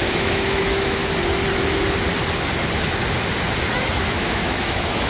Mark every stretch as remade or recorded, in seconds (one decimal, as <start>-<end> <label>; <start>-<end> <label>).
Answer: 0.0-1.0 remade; 1.0-4.1 recorded; 4.1-5.1 remade